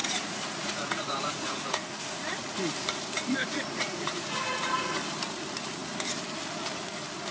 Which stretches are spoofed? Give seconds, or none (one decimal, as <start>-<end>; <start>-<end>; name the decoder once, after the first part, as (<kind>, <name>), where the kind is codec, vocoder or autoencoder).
0.0-1.8 (vocoder, Vocos); 3.4-5.0